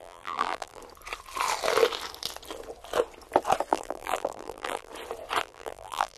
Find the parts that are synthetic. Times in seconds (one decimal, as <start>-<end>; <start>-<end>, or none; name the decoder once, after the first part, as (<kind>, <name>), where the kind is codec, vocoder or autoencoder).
0.0-0.8 (vocoder, BigVGAN v2); 3.7-4.9; 5.4-6.2